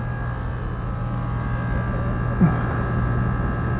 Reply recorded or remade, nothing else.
recorded